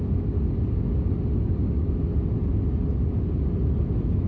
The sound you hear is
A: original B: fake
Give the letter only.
A